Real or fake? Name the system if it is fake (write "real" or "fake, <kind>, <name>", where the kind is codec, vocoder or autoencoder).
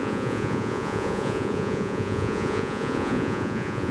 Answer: fake, vocoder, Vocos